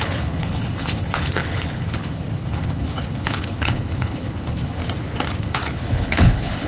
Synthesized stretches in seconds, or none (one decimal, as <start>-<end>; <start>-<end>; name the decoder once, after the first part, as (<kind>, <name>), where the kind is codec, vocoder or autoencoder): 0.0-4.8 (codec, HILCodec); 5.4-6.7